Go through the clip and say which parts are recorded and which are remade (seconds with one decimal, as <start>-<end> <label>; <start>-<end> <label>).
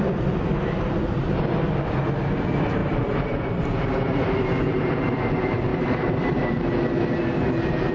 0.0-2.8 recorded; 2.8-4.9 remade; 4.9-5.7 recorded; 5.7-6.5 remade; 6.5-7.9 recorded